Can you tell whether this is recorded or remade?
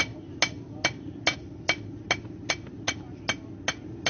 recorded